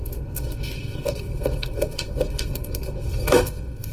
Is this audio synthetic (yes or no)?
yes